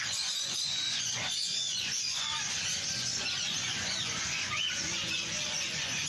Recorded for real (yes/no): no